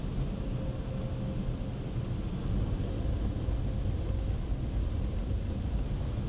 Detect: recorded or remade recorded